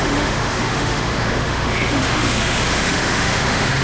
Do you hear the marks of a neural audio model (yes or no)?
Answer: yes